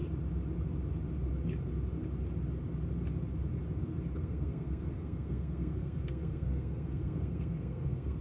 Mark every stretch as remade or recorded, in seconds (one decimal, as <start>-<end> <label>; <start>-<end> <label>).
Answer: 0.0-4.2 recorded; 4.2-8.2 remade